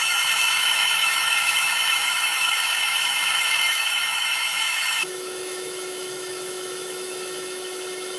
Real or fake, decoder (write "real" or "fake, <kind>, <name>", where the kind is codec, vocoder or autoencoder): fake, autoencoder, DAC-VAE